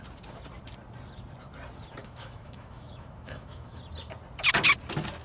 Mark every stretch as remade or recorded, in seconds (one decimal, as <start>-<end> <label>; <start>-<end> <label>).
0.0-2.0 recorded; 2.0-3.8 remade; 3.8-5.2 recorded